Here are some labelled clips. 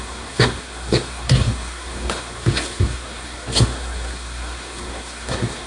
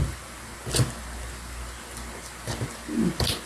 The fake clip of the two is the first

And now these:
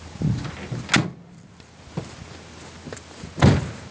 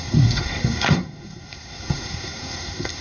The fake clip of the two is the second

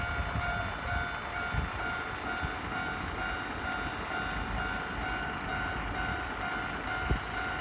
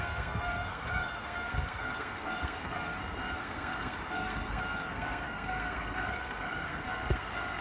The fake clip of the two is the second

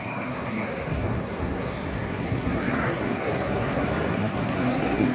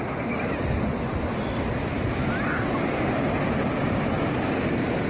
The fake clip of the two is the first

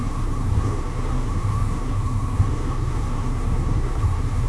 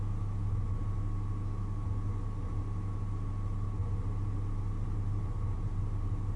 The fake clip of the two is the first